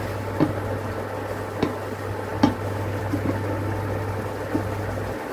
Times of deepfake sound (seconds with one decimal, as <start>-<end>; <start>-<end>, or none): none